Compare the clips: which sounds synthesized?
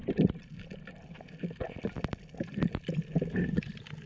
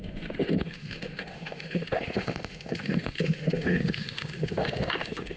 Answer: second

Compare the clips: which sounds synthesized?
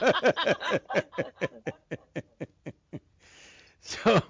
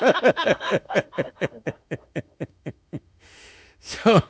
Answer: second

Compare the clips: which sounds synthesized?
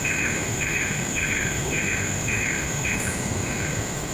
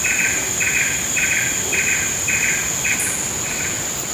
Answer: first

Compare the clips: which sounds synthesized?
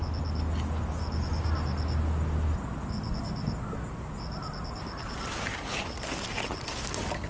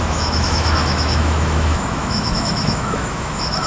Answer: second